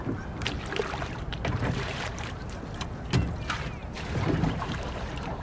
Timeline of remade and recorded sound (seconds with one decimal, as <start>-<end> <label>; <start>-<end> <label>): 0.0-1.3 recorded; 1.3-2.4 remade; 2.4-3.8 recorded; 3.8-5.4 remade

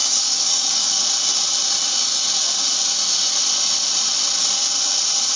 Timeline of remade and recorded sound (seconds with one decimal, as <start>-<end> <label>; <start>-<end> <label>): 0.0-1.0 remade; 1.0-5.4 recorded